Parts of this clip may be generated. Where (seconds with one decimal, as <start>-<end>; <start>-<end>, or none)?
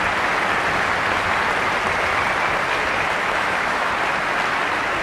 3.2-3.9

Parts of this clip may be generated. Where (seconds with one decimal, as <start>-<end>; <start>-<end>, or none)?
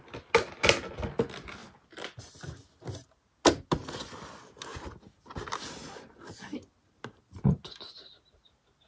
none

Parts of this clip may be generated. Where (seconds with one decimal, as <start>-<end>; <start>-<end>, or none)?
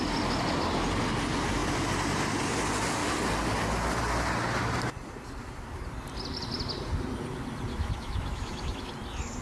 7.7-8.9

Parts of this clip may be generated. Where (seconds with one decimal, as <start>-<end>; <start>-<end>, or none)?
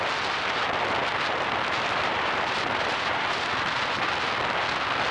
1.0-4.1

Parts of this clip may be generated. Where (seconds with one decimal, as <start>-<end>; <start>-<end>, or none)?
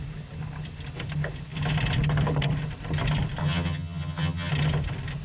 3.4-4.5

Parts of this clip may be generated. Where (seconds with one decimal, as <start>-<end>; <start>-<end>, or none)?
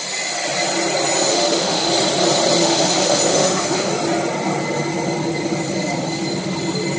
1.3-1.9; 2.6-3.9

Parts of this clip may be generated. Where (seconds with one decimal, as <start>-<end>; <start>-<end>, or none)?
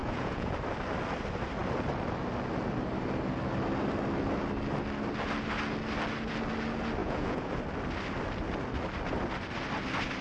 0.0-0.5; 7.0-7.6